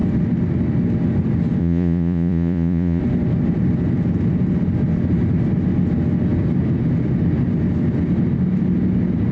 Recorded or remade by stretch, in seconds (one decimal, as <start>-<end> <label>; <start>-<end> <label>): 0.0-1.6 recorded; 1.6-3.0 remade; 3.0-9.3 recorded